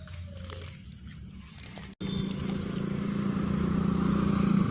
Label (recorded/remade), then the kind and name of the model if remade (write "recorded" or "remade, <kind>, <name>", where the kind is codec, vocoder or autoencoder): recorded